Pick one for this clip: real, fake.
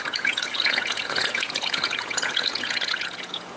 fake